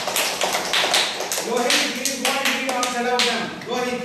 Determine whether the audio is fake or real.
real